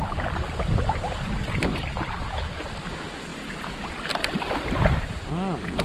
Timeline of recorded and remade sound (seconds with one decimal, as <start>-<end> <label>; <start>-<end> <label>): 0.0-5.8 recorded